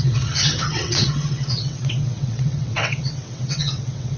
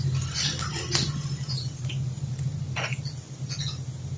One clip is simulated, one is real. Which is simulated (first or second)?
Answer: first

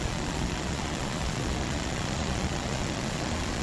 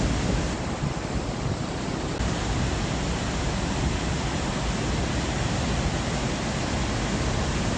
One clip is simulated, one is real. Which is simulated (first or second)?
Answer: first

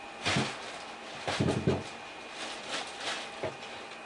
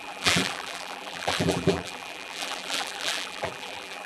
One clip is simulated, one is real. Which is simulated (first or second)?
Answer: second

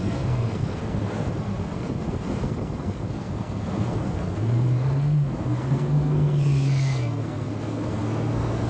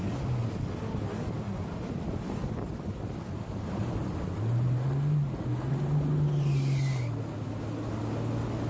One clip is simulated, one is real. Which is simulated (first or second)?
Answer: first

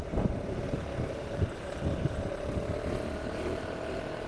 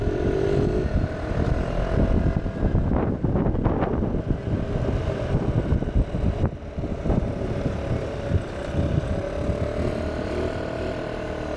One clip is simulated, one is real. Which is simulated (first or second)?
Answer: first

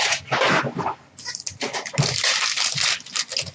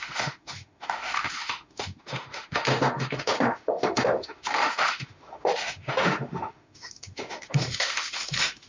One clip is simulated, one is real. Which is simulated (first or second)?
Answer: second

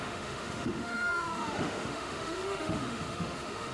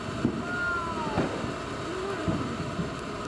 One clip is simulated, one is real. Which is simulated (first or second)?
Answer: first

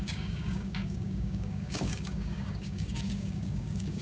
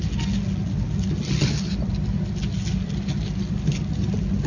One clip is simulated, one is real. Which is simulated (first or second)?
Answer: first